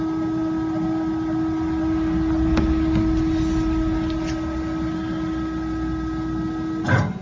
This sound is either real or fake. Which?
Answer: real